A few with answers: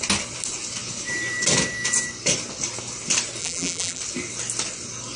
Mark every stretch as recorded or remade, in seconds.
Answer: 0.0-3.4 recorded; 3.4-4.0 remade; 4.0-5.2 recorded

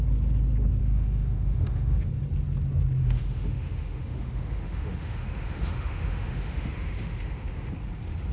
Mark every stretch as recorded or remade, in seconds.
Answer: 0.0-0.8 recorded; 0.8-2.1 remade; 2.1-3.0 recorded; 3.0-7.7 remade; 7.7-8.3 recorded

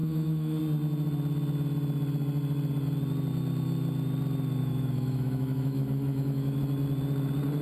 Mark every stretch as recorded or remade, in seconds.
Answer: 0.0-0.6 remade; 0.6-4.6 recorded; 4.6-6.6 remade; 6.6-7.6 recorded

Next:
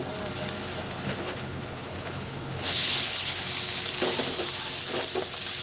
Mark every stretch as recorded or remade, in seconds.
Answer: 0.0-0.8 recorded; 0.8-3.4 remade; 3.4-5.6 recorded

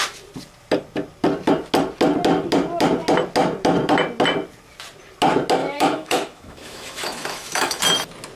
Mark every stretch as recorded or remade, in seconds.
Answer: 0.0-5.6 recorded; 5.6-7.8 remade; 7.8-8.4 recorded

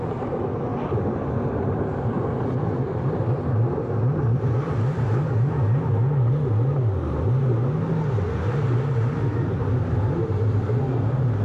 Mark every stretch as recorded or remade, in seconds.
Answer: 0.0-11.4 recorded

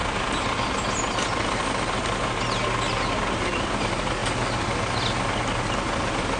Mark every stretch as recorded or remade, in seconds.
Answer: 0.0-6.4 recorded

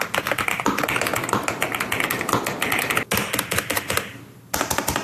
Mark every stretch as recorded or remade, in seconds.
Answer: 0.0-5.0 recorded